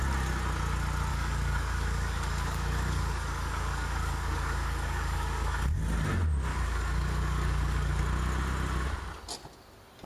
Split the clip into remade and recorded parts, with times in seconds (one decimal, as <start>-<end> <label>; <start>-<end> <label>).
0.0-1.1 recorded; 1.1-5.8 remade; 5.8-6.5 recorded; 6.5-8.0 remade; 8.0-10.1 recorded